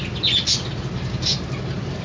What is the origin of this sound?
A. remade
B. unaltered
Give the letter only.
B